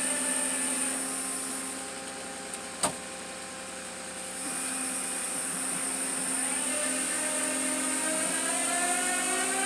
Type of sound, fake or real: real